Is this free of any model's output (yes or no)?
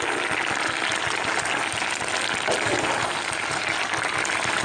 yes